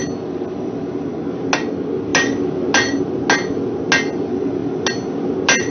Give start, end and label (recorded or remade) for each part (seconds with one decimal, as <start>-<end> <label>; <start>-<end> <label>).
0.0-5.7 recorded